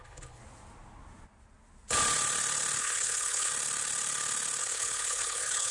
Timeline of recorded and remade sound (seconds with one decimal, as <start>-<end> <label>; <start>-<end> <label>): 0.0-0.4 remade; 0.4-2.8 recorded; 2.8-3.5 remade; 3.5-4.6 recorded; 4.6-5.7 remade